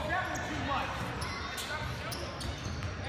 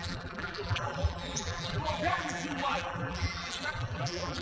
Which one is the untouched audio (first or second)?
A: first